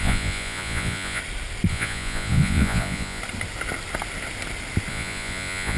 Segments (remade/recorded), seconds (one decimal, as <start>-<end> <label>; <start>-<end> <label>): 0.0-1.2 remade; 1.2-1.7 recorded; 1.7-3.2 remade; 3.2-4.9 recorded; 4.9-5.8 remade